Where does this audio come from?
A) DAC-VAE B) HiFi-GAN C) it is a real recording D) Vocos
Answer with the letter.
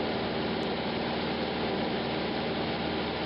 C